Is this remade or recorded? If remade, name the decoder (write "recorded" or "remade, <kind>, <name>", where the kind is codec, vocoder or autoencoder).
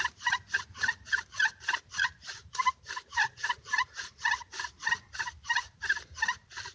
remade, vocoder, BigVGAN v2